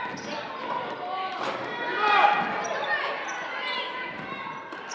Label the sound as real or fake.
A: real